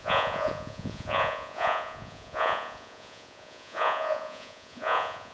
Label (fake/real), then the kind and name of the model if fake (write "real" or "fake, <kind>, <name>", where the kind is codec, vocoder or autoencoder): fake, vocoder, Vocos